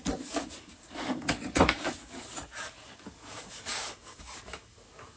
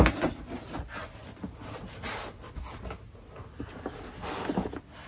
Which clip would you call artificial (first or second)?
first